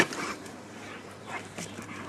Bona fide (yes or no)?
no